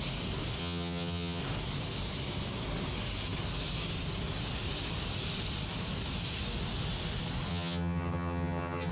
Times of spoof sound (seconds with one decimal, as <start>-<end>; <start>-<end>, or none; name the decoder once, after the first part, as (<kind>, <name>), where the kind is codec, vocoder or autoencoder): 0.6-1.4 (vocoder, HiFi-GAN); 7.5-8.9